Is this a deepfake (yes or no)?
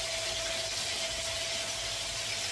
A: no